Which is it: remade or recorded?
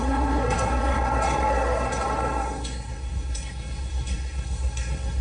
remade